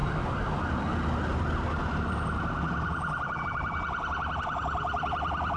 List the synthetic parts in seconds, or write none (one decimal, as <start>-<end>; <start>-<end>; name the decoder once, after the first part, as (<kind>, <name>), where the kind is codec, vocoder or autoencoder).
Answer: none